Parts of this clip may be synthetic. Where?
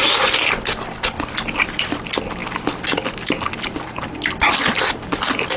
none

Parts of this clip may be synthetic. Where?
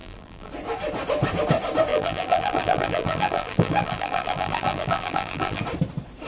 0.0-0.5 (vocoder, BigVGAN v2); 1.9-5.6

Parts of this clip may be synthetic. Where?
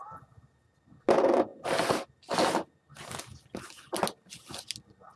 none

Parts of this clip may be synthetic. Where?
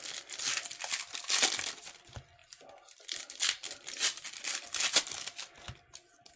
none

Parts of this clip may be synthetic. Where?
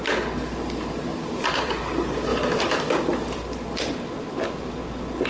1.1-1.8 (vocoder, BigVGAN v2); 2.3-2.9